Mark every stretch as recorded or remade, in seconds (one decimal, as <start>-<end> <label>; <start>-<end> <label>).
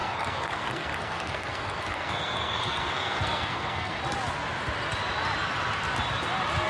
0.0-4.0 remade; 4.0-6.7 recorded